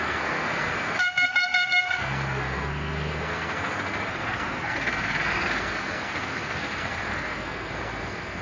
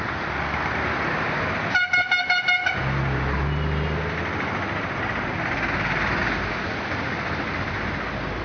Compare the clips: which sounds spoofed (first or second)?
first